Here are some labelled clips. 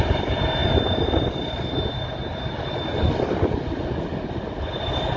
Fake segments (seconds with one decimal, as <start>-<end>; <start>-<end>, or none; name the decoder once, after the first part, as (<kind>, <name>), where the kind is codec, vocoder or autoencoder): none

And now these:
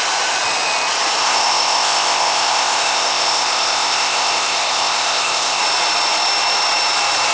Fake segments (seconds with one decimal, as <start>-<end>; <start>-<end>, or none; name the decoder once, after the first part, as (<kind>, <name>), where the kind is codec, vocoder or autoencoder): 1.2-5.6 (codec, ZipCodec)

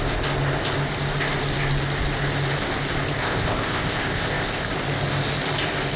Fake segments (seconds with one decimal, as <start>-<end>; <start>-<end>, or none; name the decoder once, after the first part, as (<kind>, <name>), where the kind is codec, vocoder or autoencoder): 3.2-4.7 (codec, ZipCodec)